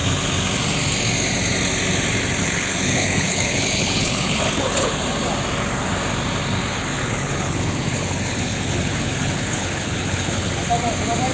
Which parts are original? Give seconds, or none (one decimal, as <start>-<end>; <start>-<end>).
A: 0.0-2.4; 5.0-6.7; 10.5-11.3